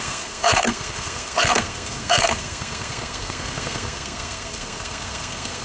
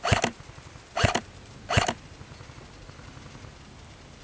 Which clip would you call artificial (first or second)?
first